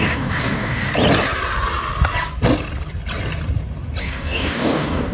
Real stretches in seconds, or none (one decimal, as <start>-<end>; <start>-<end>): 0.9-4.0